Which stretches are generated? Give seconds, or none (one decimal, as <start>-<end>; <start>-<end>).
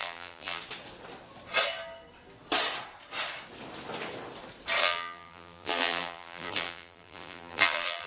0.0-0.6; 4.8-8.1